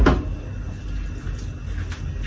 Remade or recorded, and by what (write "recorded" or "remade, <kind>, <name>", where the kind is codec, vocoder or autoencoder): recorded